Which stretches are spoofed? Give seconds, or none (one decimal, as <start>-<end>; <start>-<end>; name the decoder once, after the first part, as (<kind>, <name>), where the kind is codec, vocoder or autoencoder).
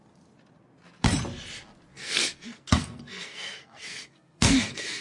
1.9-5.0 (codec, SNAC)